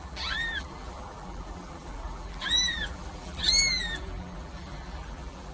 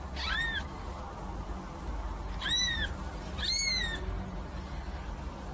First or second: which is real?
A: second